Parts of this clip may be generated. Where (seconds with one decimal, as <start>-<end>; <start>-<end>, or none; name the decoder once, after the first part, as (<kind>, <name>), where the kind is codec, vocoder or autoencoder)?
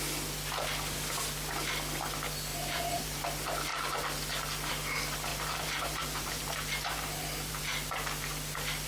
2.5-3.2 (vocoder, BigVGAN v2); 5.3-7.6